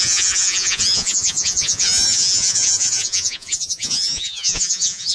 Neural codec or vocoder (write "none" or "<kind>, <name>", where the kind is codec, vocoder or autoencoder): vocoder, Vocos